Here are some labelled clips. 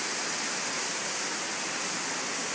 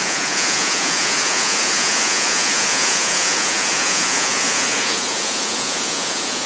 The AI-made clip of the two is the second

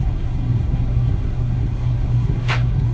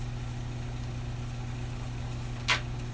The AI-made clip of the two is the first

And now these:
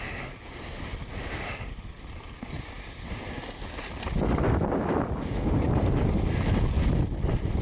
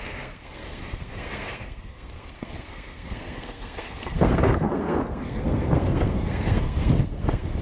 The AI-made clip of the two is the second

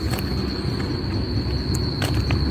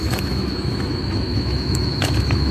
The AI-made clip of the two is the second